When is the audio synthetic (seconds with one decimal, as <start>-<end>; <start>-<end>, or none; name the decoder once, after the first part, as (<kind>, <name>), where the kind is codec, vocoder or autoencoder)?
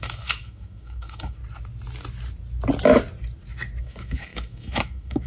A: 0.0-1.4 (autoencoder, DAC-VAE); 3.8-5.3